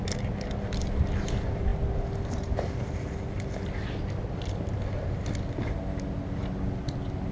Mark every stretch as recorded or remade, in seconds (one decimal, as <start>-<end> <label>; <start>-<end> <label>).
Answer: 0.0-7.3 recorded